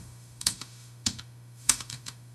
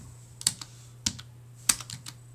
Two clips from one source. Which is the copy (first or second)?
first